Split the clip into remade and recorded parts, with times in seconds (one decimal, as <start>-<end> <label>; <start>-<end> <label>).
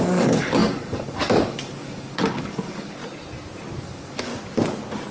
0.0-3.0 remade; 3.0-3.8 recorded; 3.8-4.3 remade; 4.3-5.1 recorded